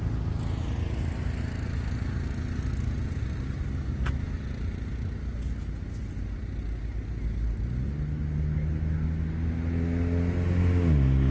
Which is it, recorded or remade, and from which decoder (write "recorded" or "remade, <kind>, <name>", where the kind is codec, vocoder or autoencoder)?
recorded